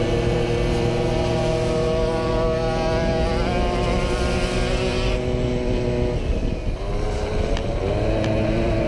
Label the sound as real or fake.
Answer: real